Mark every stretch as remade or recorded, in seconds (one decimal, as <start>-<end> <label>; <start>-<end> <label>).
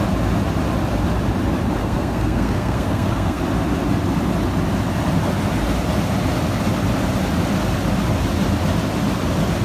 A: 0.0-1.8 recorded; 1.8-3.4 remade; 3.4-9.6 recorded